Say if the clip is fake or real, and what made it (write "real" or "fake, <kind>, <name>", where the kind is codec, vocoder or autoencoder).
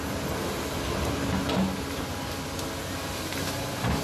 real